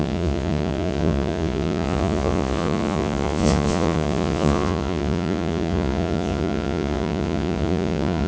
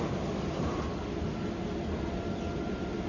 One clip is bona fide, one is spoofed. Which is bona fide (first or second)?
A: second